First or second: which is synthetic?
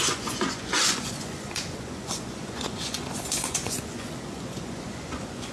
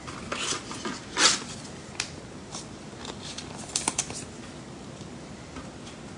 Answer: first